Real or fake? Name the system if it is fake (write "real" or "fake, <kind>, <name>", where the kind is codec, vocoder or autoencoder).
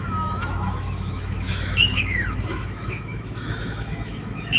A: fake, autoencoder, DAC-VAE